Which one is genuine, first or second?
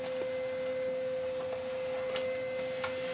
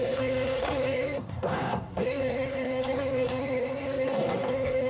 first